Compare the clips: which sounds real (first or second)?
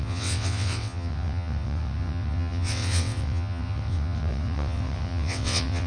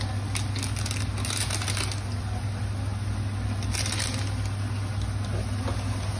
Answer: second